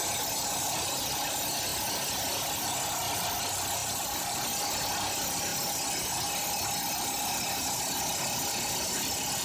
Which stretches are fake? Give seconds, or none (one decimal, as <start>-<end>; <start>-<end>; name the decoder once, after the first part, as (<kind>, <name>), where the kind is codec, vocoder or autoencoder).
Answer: 3.8-4.4 (vocoder, BigVGAN v2)